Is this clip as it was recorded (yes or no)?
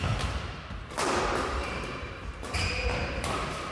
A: no